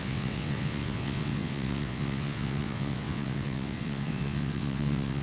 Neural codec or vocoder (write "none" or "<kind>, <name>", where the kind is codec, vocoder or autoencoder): vocoder, WaveNeXt